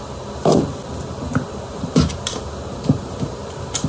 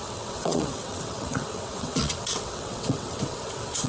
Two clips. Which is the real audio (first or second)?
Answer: first